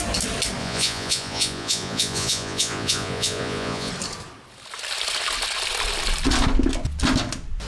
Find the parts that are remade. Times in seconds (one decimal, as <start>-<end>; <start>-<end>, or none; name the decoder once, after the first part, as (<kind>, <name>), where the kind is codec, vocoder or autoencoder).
0.6-3.9 (vocoder, Vocos)